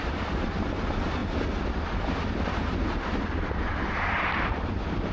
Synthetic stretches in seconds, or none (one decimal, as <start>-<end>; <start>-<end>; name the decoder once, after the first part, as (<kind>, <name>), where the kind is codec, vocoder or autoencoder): none